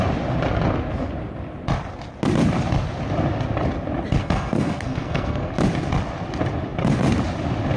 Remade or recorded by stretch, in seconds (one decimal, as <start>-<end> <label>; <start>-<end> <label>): 0.0-4.2 recorded; 4.2-5.5 remade; 5.5-7.8 recorded